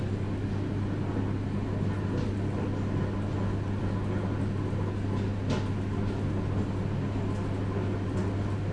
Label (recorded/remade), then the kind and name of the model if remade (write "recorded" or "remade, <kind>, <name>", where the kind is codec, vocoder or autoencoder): recorded